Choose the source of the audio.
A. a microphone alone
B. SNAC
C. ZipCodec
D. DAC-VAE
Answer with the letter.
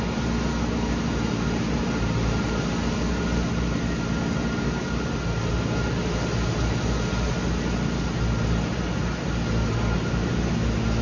A